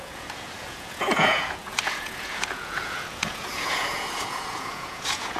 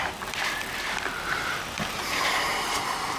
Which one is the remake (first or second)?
first